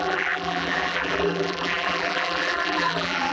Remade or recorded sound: remade